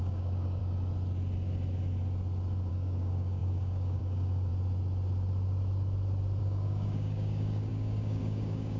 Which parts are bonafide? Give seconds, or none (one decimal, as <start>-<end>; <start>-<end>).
0.6-2.7; 4.5-6.4